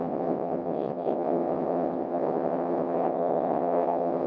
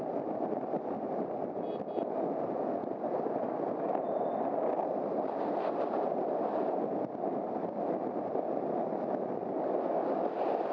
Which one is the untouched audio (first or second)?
second